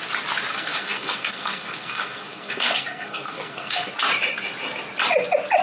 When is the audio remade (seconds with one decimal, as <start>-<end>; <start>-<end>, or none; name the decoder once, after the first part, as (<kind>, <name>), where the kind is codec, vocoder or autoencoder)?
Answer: 0.5-3.9 (codec, SNAC)